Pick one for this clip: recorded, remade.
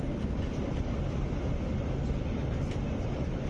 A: remade